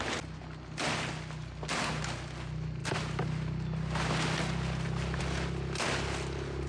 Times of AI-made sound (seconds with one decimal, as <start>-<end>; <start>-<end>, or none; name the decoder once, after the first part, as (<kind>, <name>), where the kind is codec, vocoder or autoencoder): none